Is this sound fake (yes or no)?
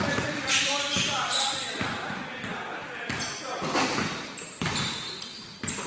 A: yes